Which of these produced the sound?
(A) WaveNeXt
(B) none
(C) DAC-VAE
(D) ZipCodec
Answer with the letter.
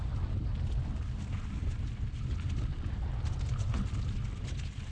B